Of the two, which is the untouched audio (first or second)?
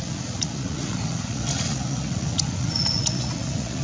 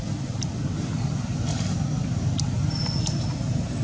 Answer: second